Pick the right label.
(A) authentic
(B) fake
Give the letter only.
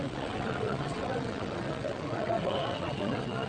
B